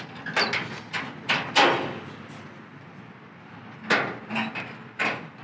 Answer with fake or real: real